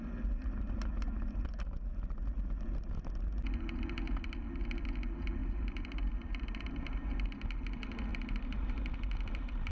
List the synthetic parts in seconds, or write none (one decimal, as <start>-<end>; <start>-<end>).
5.4-6.1; 8.1-8.7